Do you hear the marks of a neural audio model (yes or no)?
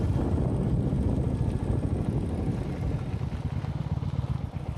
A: no